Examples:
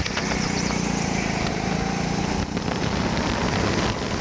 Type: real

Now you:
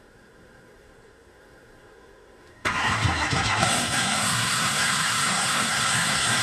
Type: fake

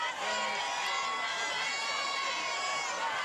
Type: real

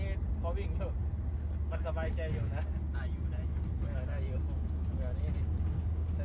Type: real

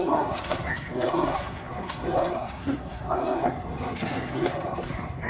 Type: fake